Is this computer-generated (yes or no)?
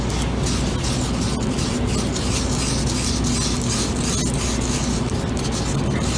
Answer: no